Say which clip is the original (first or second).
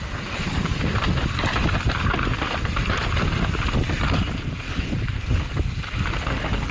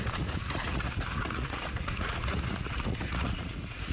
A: first